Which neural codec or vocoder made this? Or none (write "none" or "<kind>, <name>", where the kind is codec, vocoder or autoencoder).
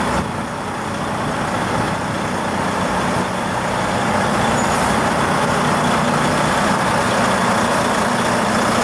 none